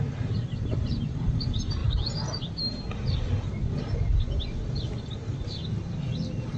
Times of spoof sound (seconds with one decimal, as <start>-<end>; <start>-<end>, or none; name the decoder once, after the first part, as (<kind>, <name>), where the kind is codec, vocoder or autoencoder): none

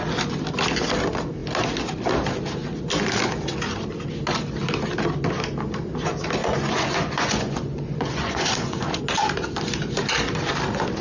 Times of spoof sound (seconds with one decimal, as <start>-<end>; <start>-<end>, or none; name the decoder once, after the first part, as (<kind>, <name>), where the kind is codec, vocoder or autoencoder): 6.4-9.0 (vocoder, Vocos)